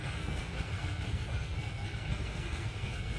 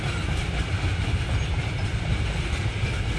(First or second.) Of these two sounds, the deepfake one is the first